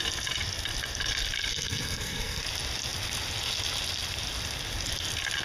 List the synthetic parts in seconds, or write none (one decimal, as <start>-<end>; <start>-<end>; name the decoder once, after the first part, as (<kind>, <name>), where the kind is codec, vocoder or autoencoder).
1.5-2.4 (codec, SNAC)